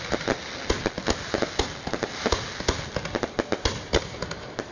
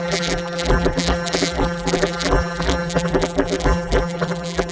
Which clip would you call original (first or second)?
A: first